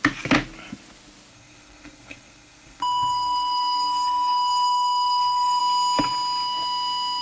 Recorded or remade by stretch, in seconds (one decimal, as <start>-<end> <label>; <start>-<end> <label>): 0.0-1.3 recorded; 1.3-5.6 remade; 5.6-7.2 recorded